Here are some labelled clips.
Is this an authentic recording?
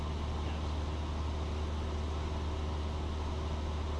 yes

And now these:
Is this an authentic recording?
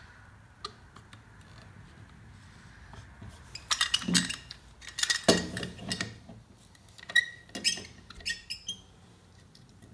yes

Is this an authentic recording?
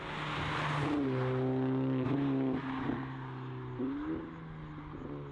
yes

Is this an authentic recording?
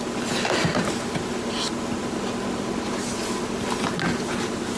yes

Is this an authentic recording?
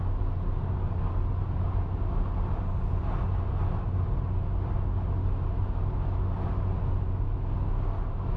yes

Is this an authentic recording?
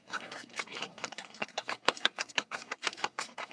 no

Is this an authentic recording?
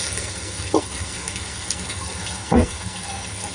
no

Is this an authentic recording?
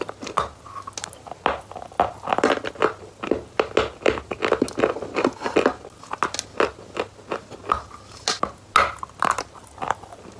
yes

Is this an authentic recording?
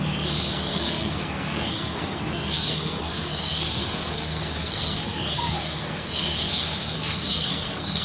no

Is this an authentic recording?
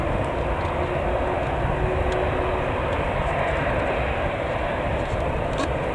yes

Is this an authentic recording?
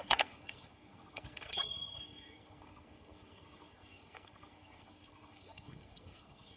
no